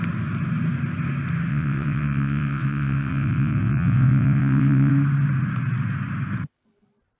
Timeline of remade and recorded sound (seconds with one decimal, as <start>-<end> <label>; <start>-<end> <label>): 0.0-1.5 recorded; 1.5-4.9 remade; 4.9-7.2 recorded